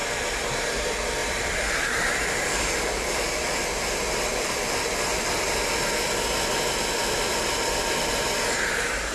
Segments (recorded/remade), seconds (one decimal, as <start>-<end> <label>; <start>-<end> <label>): 0.0-0.5 remade; 0.5-1.2 recorded; 1.2-4.9 remade; 4.9-7.0 recorded; 7.0-8.1 remade; 8.1-9.1 recorded